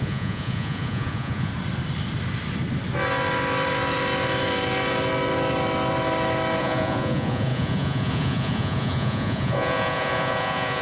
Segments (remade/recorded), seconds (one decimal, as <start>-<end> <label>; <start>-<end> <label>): 0.0-1.5 remade; 1.5-6.6 recorded; 6.6-10.8 remade